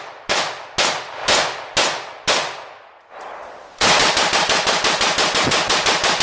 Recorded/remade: recorded